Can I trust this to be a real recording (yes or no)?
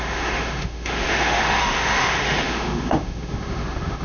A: no